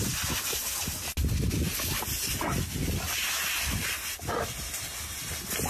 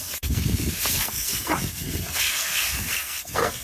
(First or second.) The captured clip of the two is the first